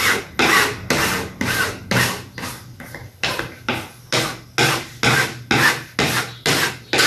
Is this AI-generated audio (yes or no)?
no